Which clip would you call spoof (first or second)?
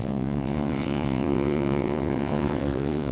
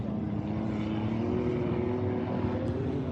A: first